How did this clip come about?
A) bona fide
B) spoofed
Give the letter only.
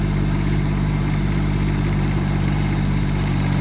B